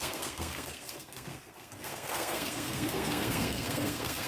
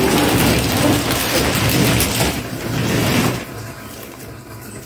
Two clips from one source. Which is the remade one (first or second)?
first